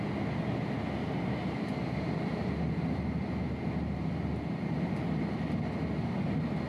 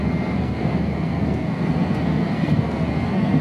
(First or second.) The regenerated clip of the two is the second